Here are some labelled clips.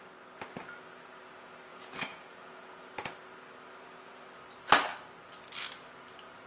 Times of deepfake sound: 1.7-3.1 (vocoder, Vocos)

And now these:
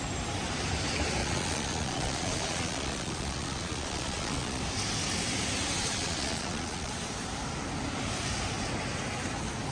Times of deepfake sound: 1.2-4.6 (vocoder, Vocos); 5.8-6.9

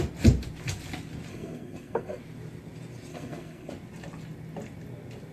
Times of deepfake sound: 1.3-2.2 (codec, SNAC); 3.1-3.7

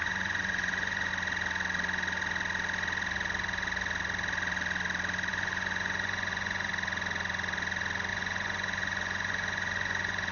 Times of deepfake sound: 0.0-1.1 (vocoder, Vocos); 5.3-6.7; 8.1-10.3

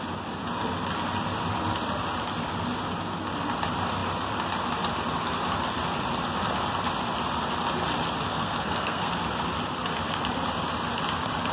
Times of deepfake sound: 8.3-9.1 (codec, SNAC)